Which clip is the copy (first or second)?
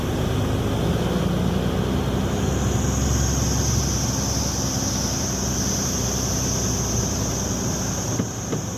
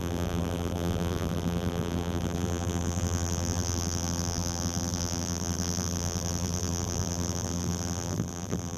second